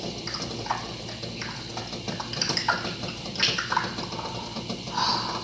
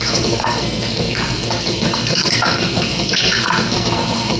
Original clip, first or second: first